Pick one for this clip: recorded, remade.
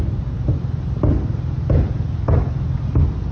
recorded